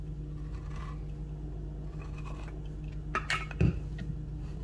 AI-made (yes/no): no